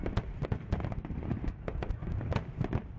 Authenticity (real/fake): real